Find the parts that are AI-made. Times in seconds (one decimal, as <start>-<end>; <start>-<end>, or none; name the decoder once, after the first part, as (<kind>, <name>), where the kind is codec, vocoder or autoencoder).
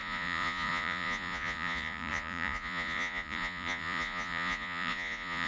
0.0-5.5 (vocoder, Vocos)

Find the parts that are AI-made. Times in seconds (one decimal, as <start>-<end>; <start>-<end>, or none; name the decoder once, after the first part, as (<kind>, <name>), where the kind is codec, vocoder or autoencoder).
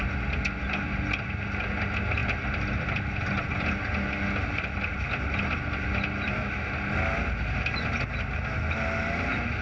none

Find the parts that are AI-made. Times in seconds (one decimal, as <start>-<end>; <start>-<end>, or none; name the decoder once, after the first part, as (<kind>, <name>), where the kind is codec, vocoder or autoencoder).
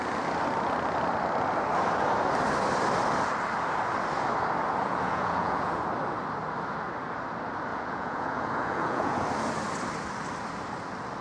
4.8-5.8 (vocoder, Vocos); 7.7-9.2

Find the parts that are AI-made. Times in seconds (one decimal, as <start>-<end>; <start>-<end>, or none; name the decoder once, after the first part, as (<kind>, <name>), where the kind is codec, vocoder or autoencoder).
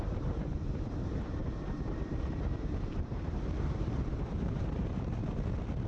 0.0-5.9 (vocoder, BigVGAN v2)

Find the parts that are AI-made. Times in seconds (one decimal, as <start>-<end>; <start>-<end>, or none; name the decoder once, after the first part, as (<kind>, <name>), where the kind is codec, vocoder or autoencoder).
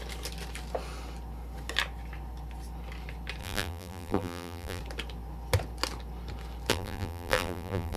3.4-4.8 (vocoder, BigVGAN v2); 6.7-8.0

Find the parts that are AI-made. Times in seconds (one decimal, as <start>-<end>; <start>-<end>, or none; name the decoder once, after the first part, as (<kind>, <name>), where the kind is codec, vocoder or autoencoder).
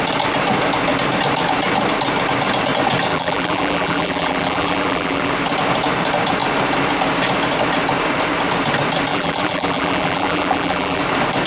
3.1-5.3 (vocoder, BigVGAN v2); 9.1-11.0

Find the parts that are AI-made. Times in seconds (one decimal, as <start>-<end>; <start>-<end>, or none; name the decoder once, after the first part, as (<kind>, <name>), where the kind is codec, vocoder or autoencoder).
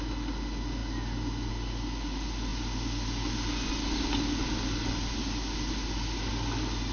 none